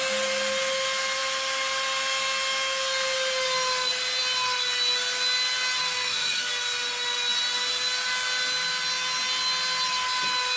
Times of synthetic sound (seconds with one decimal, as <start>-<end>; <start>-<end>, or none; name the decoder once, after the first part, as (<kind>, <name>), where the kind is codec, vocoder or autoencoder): 6.0-6.5 (autoencoder, DAC-VAE)